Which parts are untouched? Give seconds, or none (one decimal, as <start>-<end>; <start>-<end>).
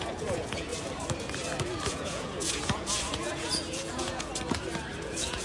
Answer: 0.7-1.9; 4.3-5.0